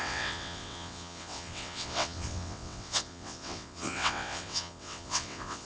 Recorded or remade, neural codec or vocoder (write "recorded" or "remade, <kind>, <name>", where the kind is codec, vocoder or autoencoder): remade, vocoder, WaveNeXt